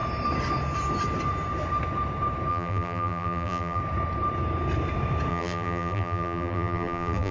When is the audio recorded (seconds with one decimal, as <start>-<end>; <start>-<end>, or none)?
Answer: 0.0-2.5; 3.8-5.3